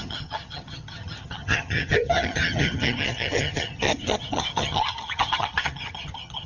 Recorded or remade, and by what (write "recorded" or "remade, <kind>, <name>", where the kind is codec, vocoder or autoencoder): remade, vocoder, HiFi-GAN